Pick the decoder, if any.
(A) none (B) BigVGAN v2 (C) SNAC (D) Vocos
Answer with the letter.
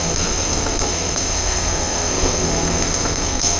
C